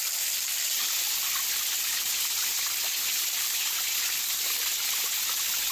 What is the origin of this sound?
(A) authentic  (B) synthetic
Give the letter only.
A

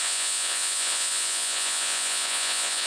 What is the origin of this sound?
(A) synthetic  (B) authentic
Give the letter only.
A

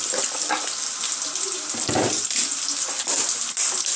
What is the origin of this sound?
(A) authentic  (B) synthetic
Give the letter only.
A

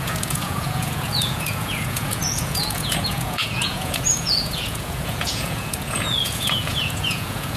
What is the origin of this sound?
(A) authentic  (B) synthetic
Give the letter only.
B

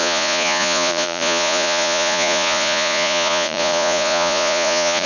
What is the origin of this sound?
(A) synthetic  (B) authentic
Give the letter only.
A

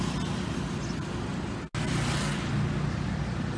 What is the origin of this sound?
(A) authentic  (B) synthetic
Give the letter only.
A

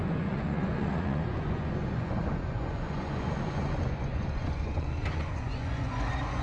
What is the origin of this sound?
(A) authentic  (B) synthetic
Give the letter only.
B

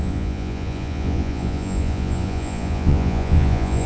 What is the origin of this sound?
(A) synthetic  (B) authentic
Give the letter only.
A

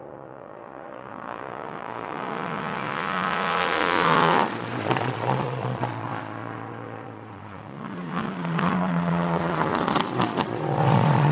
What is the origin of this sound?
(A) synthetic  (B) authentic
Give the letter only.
A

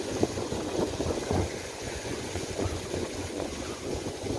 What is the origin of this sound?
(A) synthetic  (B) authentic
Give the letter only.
A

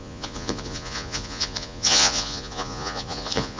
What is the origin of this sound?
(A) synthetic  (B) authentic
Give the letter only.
A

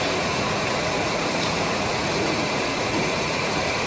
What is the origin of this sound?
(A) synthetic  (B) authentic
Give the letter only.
A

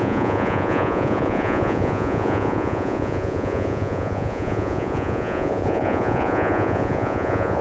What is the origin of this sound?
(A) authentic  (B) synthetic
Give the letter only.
B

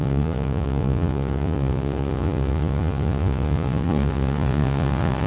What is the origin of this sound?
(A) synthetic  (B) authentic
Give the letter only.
A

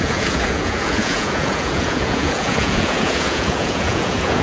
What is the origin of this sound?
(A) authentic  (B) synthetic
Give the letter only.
B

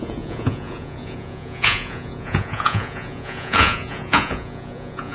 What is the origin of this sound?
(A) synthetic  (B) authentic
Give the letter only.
A